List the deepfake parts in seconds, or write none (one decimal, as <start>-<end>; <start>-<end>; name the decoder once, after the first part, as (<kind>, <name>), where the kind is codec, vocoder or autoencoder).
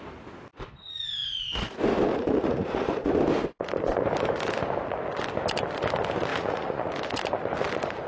1.2-1.7 (vocoder, Vocos); 2.1-3.1; 6.3-6.9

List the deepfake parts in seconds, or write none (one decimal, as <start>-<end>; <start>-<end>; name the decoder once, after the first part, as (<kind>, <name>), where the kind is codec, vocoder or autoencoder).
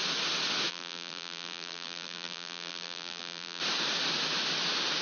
0.7-3.6 (vocoder, BigVGAN v2)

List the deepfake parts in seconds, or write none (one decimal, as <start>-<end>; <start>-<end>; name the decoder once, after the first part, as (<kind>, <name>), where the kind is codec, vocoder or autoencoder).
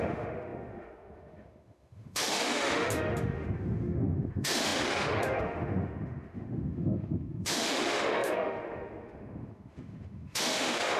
0.0-11.0 (autoencoder, DAC-VAE)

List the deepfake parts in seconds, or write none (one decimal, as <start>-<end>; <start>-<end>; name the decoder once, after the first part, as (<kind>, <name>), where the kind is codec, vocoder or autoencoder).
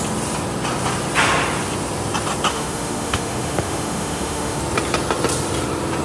2.5-4.6 (autoencoder, DAC-VAE)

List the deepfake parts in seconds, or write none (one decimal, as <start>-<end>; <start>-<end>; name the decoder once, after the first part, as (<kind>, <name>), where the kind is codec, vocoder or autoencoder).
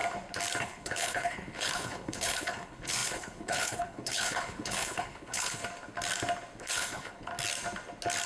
0.6-5.6 (codec, HILCodec); 6.6-7.3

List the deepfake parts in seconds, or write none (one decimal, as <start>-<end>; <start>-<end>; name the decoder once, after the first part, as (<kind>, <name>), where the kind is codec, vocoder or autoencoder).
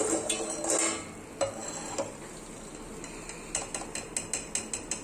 none